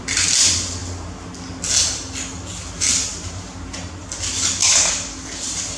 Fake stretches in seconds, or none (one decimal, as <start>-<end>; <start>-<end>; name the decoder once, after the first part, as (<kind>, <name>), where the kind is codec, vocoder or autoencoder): 3.1-3.9 (vocoder, BigVGAN v2); 4.6-5.1